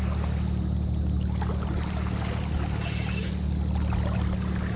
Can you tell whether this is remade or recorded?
recorded